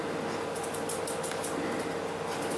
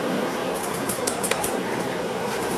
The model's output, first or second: second